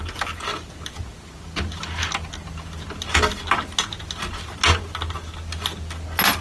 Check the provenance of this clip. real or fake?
real